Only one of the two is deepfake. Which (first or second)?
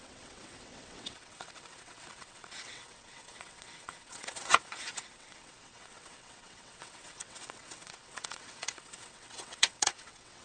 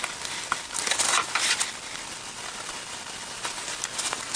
first